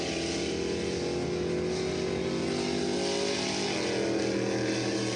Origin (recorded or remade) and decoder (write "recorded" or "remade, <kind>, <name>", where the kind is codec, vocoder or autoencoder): recorded